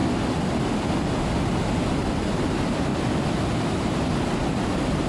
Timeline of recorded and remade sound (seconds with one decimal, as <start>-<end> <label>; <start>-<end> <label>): 0.0-5.1 recorded